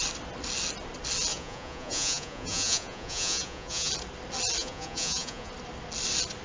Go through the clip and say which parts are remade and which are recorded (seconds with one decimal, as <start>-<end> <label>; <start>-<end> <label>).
0.0-1.3 recorded; 1.3-3.9 remade; 3.9-4.6 recorded; 4.6-5.5 remade; 5.5-6.4 recorded